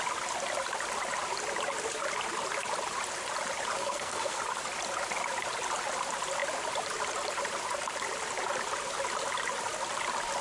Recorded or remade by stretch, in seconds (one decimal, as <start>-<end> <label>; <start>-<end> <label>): 0.0-3.8 recorded; 3.8-4.4 remade; 4.4-10.4 recorded